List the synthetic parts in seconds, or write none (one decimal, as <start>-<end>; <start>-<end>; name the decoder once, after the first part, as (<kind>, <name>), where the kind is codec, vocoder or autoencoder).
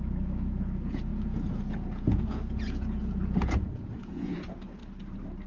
0.0-4.8 (vocoder, Vocos)